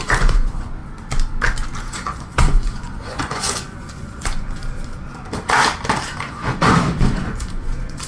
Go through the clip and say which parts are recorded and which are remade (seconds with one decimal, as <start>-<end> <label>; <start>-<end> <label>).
0.0-0.8 remade; 0.8-1.8 recorded; 1.8-4.6 remade; 4.6-6.1 recorded; 6.1-8.1 remade